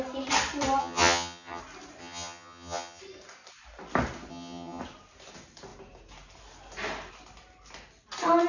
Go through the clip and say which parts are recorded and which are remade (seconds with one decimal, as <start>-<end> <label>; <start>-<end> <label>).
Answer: 0.0-0.8 recorded; 0.8-1.6 remade; 1.6-2.0 recorded; 2.0-3.0 remade; 3.0-4.3 recorded; 4.3-4.8 remade; 4.8-8.5 recorded